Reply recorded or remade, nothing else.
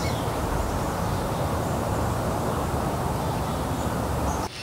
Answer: remade